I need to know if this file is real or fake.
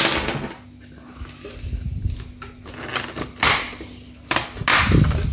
real